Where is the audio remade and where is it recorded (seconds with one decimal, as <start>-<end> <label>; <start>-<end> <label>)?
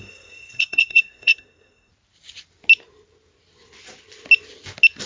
0.0-1.9 remade; 1.9-5.1 recorded